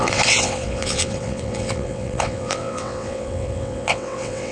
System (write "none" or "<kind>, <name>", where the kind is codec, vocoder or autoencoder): vocoder, WaveNeXt